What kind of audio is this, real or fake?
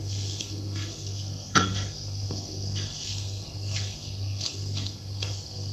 fake